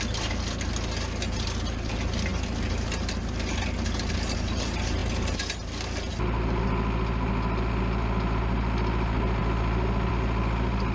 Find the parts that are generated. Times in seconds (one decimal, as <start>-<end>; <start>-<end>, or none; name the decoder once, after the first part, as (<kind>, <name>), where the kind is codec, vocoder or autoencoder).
none